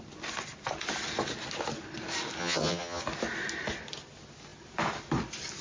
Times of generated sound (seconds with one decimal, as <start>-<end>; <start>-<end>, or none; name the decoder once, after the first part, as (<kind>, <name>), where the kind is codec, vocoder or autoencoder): 2.4-3.0 (vocoder, HiFi-GAN)